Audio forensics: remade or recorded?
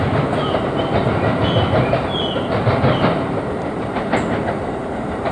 recorded